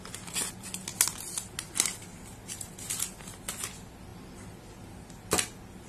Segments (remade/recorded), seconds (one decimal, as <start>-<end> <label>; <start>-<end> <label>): 0.0-4.1 recorded; 4.1-4.6 remade; 4.6-5.9 recorded

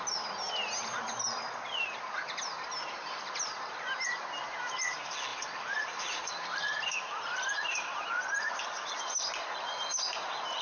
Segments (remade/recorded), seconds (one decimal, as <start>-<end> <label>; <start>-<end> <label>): 0.0-5.3 recorded; 5.3-8.6 remade; 8.6-10.6 recorded

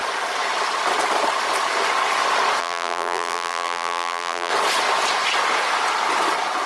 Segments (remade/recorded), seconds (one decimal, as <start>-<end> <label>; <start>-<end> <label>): 0.0-2.6 recorded; 2.6-4.5 remade; 4.5-6.7 recorded

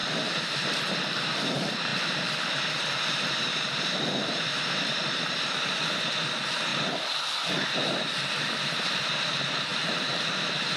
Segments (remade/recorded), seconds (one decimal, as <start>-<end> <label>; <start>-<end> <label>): 0.0-0.9 recorded; 0.9-6.7 remade; 6.7-8.6 recorded; 8.6-10.8 remade

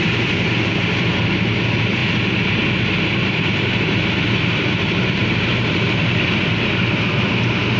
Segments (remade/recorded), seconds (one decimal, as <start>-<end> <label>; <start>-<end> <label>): 0.0-2.0 remade; 2.0-3.0 recorded; 3.0-7.8 remade

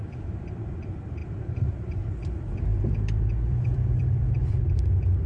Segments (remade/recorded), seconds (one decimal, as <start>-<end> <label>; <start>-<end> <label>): 0.0-1.2 recorded; 1.2-2.0 remade; 2.0-2.7 recorded; 2.7-4.7 remade; 4.7-5.3 recorded

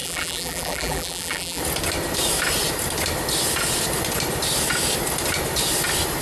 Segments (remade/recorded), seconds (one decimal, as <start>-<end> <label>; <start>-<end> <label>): 0.0-1.6 remade; 1.6-6.2 recorded